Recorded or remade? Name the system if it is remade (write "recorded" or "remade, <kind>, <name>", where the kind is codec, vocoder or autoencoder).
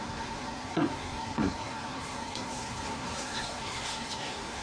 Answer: remade, codec, SNAC